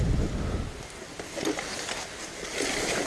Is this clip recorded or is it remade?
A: recorded